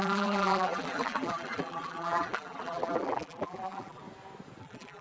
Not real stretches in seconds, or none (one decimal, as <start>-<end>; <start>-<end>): 0.0-4.0; 4.6-5.0